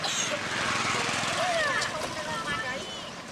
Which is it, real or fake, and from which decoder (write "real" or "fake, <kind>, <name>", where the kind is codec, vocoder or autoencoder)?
real